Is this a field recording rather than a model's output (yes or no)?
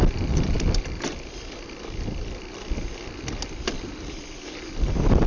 yes